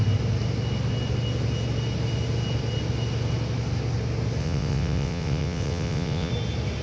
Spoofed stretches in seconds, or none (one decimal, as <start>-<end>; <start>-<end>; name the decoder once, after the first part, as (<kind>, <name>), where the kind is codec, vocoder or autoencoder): 4.4-6.3 (vocoder, WaveNeXt)